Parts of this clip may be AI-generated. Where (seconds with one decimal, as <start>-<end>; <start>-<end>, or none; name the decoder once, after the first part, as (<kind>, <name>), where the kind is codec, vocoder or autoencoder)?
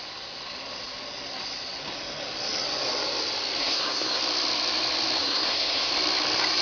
3.6-4.2 (codec, SNAC); 5.2-5.9